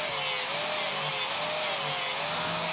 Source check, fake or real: real